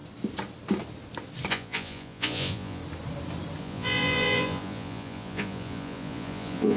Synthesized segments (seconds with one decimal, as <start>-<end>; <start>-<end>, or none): 1.5-2.8; 3.6-6.8